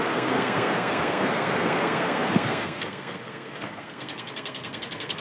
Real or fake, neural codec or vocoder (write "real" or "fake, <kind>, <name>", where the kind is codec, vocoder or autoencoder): fake, codec, SNAC